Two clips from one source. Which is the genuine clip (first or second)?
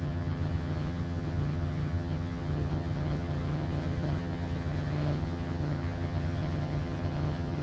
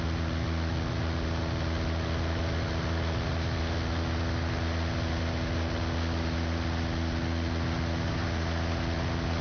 second